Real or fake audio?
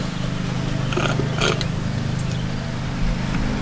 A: real